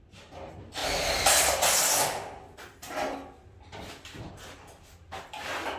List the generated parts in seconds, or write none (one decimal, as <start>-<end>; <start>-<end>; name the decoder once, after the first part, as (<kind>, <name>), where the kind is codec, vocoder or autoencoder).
none